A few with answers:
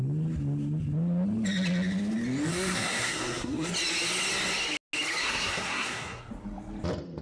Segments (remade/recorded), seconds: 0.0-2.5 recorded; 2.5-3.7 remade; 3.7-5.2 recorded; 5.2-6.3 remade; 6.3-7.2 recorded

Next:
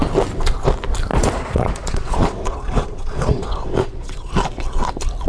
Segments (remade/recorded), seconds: 0.0-1.1 recorded; 1.1-4.3 remade; 4.3-5.3 recorded

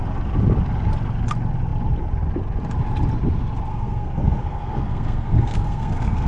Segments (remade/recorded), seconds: 0.0-3.7 recorded; 3.7-6.3 remade

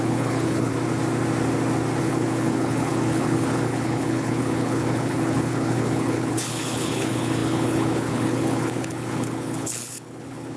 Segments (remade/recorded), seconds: 0.0-0.7 remade; 0.7-2.0 recorded; 2.0-10.6 remade

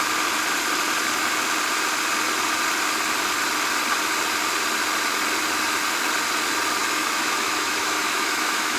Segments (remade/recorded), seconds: 0.0-6.8 recorded; 6.8-8.8 remade

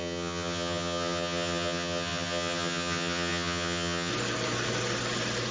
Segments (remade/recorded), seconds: 0.0-4.1 remade; 4.1-5.5 recorded

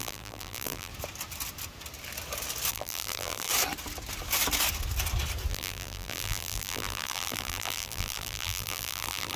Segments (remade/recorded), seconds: 0.0-0.9 remade; 0.9-2.7 recorded; 2.7-3.5 remade; 3.5-5.5 recorded; 5.5-9.4 remade